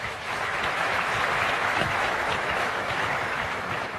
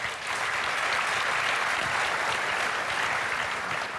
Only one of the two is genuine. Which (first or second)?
second